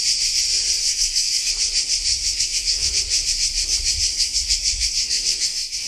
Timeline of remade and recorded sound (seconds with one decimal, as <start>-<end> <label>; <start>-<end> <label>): 0.0-0.8 recorded; 0.8-1.5 remade; 1.5-2.1 recorded; 2.1-2.9 remade; 2.9-4.1 recorded; 4.1-5.9 remade